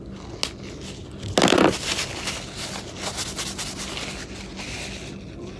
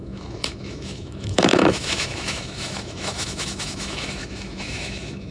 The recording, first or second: first